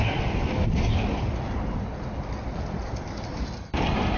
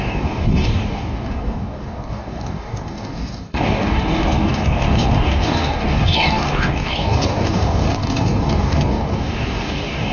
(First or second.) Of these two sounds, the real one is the first